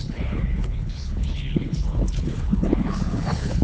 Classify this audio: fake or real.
fake